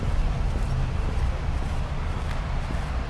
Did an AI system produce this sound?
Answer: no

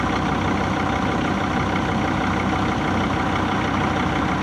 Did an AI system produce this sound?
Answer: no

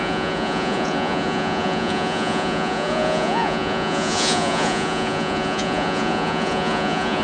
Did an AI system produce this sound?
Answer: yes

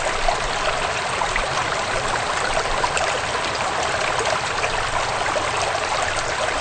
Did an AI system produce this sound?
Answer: no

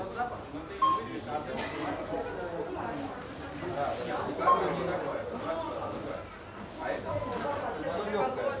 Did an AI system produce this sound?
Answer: no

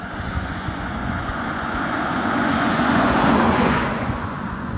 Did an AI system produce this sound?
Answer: yes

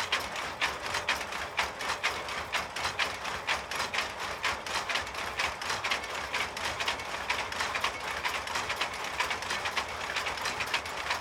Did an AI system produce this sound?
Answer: no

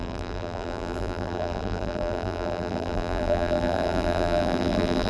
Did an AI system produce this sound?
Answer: yes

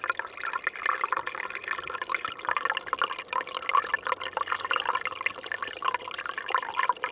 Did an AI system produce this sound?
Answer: no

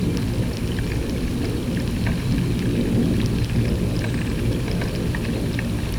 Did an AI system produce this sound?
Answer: no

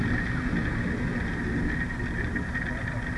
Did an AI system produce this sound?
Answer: no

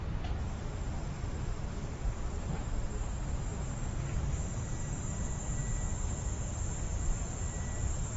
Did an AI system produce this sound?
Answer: yes